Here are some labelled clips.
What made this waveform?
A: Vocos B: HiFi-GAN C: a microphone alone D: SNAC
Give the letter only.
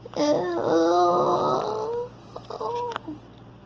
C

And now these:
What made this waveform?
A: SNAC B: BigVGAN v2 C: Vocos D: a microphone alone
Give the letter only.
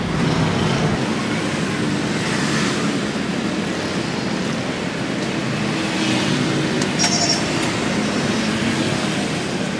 D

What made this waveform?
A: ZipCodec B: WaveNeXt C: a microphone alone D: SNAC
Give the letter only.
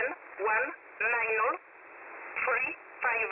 C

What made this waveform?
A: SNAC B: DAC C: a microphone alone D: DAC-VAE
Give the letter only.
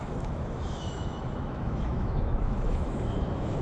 D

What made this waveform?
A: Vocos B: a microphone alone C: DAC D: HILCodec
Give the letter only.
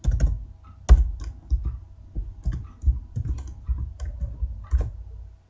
B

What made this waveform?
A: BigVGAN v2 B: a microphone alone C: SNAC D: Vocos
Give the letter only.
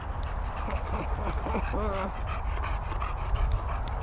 B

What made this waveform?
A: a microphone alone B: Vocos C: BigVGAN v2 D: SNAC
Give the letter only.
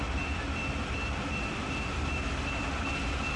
C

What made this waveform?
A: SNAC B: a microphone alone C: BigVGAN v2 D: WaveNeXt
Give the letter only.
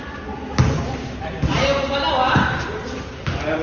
B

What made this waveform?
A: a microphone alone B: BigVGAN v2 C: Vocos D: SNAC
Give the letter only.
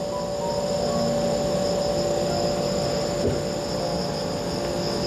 A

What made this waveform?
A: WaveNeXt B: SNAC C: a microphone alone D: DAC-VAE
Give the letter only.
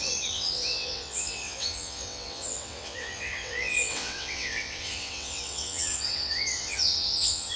A